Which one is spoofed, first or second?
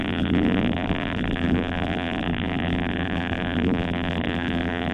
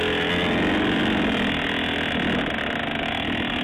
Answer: first